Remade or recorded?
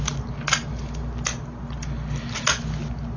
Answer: recorded